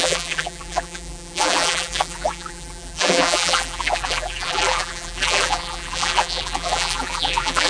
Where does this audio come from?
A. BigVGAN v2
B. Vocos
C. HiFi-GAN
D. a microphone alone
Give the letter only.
A